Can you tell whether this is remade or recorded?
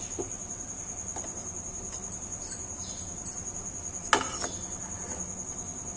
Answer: recorded